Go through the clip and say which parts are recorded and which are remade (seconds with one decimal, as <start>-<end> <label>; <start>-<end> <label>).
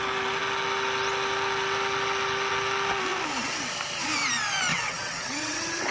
0.0-4.7 recorded; 4.7-5.9 remade